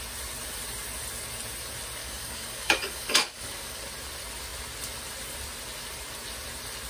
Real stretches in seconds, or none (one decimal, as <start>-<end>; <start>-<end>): 0.0-2.0; 3.9-6.9